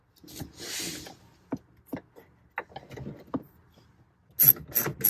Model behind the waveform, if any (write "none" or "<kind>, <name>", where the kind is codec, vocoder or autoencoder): none